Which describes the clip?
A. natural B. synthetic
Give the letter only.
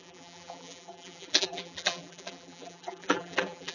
B